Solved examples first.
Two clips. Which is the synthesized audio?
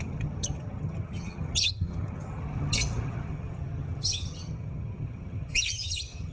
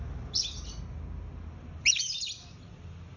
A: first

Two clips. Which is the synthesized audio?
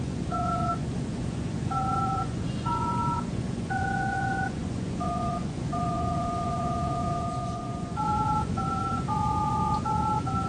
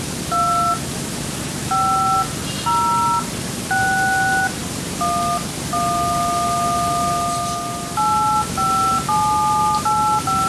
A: first